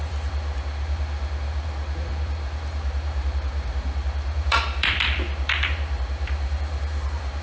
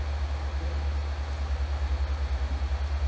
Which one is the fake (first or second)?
first